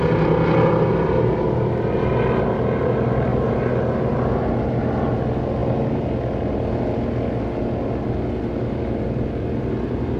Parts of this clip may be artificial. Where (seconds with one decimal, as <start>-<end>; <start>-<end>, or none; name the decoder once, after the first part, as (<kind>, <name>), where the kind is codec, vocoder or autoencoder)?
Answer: none